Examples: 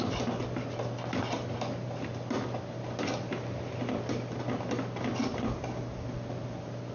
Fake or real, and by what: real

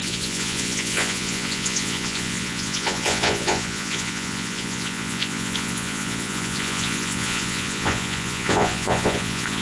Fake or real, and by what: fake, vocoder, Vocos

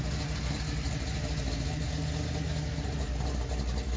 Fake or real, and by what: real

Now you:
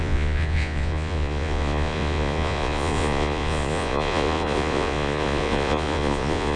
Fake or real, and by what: fake, vocoder, Vocos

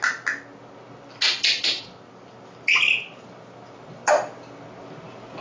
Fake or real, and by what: real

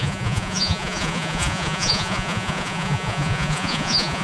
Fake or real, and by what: fake, vocoder, Vocos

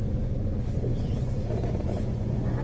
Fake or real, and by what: fake, vocoder, Vocos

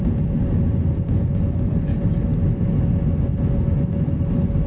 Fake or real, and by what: real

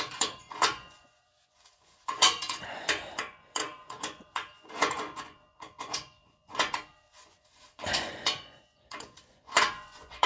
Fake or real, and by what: fake, vocoder, Vocos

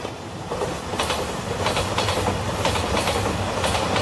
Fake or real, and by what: real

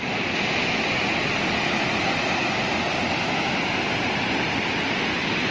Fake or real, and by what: real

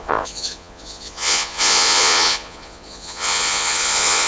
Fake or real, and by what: fake, vocoder, Vocos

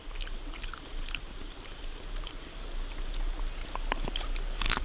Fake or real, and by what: real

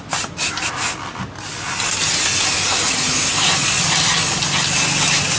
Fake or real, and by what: real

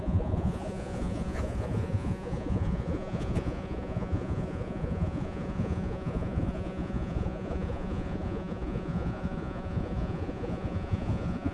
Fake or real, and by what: fake, vocoder, Vocos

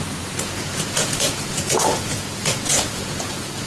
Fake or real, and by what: fake, vocoder, Vocos